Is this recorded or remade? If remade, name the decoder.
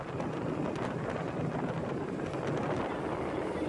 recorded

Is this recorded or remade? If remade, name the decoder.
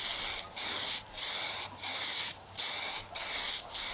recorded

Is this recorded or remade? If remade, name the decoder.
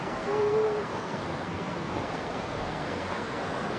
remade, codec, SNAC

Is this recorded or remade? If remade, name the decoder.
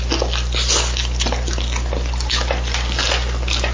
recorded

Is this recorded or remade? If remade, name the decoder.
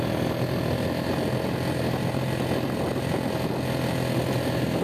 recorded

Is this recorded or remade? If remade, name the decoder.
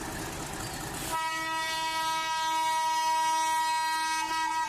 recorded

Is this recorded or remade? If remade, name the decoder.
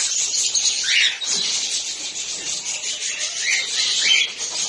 recorded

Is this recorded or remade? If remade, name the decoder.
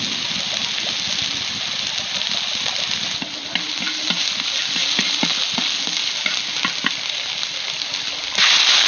recorded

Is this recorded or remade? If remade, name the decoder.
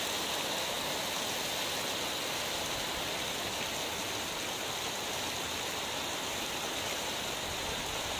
recorded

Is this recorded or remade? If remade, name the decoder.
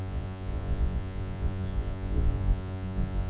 remade, vocoder, Vocos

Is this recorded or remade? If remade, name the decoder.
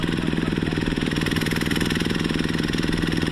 remade, vocoder, BigVGAN v2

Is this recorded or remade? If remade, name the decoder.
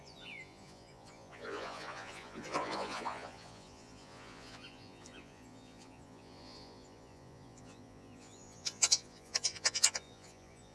remade, vocoder, Vocos